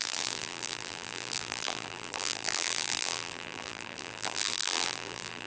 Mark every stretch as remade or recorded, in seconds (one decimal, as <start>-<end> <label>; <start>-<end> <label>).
0.0-5.5 remade